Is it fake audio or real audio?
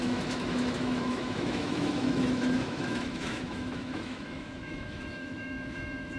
fake